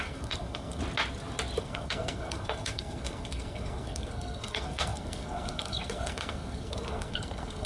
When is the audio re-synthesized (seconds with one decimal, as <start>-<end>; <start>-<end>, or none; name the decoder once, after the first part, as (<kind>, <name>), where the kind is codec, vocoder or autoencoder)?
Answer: 0.0-0.8 (codec, SNAC); 1.6-7.7